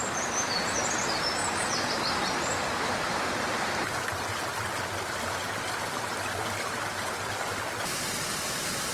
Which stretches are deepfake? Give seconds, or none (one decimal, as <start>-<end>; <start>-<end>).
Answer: none